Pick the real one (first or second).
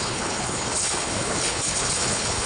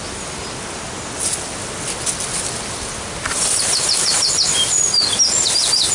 second